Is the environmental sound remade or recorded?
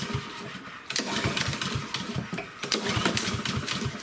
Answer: recorded